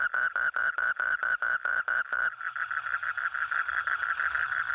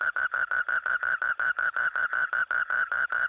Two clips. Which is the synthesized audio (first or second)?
second